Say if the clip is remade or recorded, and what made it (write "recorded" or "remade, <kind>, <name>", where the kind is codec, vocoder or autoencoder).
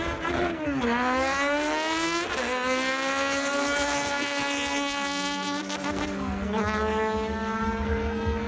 remade, codec, SNAC